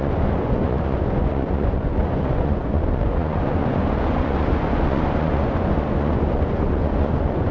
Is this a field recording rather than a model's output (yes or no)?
no